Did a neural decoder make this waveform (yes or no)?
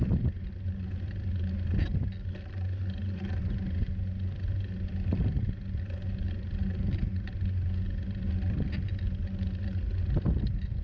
no